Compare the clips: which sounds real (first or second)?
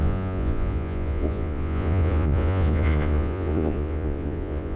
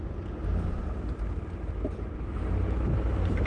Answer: second